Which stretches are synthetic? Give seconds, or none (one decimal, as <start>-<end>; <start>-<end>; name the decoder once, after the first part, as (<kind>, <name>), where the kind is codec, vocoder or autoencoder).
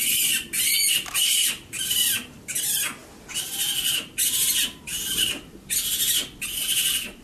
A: none